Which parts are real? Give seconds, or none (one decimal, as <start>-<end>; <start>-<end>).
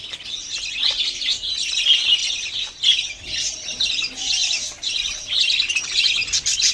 0.0-2.2; 3.9-4.4; 6.0-6.7